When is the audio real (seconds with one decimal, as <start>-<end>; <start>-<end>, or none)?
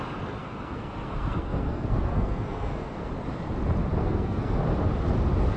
0.0-0.4; 3.1-4.0; 4.6-5.6